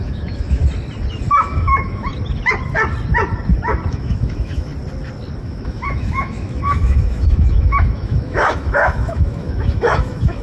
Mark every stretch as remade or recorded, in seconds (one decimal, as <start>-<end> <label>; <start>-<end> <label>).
0.0-0.6 remade; 0.6-1.3 recorded; 1.3-2.1 remade; 2.1-3.9 recorded; 3.9-4.7 remade; 4.7-5.4 recorded; 5.4-10.4 remade